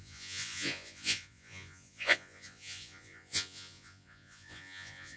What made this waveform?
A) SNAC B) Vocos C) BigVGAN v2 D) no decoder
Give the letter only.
B